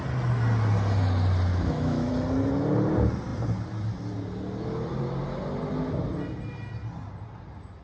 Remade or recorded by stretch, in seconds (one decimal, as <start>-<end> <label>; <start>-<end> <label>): 0.0-1.5 recorded; 1.5-2.1 remade; 2.1-7.8 recorded